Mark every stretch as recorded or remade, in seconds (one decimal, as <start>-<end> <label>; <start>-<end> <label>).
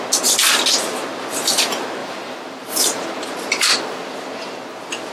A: 0.0-2.0 recorded; 2.0-3.1 remade; 3.1-5.1 recorded